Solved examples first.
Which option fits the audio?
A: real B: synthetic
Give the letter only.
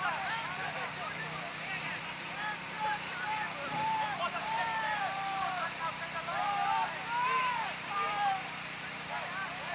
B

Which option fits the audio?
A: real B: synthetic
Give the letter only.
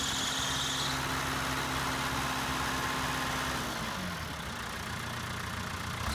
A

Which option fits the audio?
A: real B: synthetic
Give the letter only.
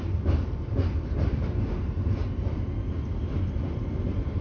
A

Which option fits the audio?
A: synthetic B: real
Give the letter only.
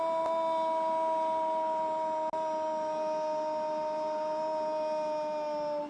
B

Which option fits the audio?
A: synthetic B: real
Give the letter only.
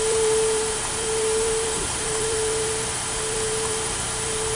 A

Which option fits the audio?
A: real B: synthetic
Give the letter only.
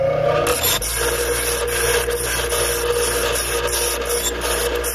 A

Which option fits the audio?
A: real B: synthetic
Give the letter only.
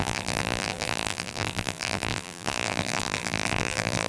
B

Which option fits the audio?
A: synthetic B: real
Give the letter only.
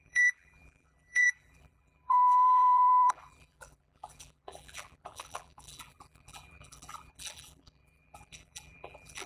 A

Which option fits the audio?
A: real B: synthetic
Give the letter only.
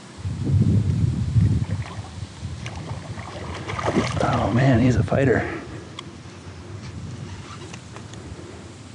B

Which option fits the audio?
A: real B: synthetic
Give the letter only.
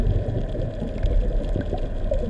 A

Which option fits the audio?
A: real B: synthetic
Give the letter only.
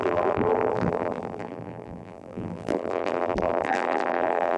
B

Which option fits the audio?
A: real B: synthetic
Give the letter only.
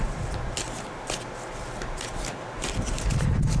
B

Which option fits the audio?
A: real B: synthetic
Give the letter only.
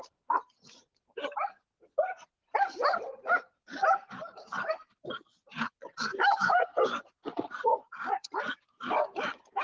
B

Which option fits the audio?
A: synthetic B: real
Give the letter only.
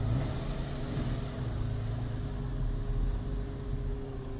B